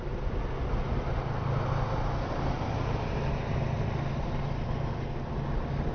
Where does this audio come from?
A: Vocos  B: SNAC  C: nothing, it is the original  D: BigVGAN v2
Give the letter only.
C